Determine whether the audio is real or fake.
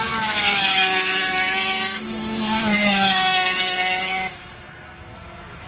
fake